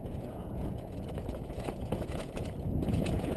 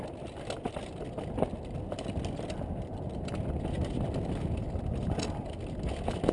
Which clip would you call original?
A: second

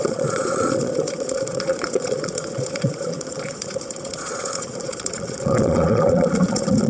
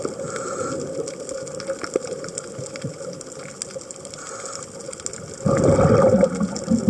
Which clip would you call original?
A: second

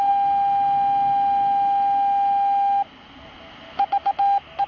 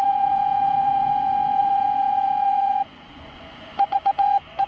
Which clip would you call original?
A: first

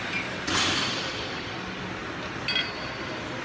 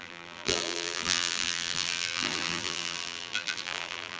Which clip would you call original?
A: first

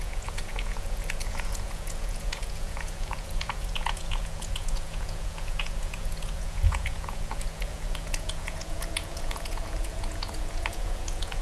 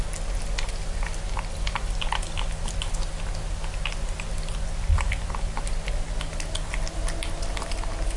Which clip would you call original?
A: second